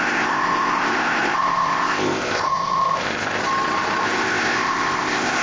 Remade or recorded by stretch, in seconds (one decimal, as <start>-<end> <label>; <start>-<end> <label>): 0.0-3.4 remade; 3.4-4.0 recorded; 4.0-5.4 remade